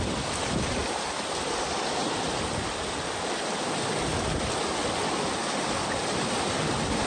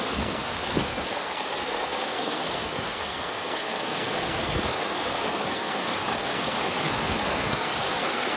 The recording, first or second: first